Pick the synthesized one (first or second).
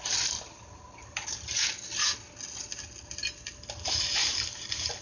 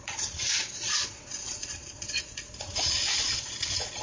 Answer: second